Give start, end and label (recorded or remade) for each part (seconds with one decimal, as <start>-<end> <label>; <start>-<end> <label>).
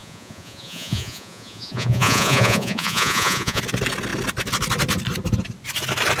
0.0-3.6 remade; 3.6-6.2 recorded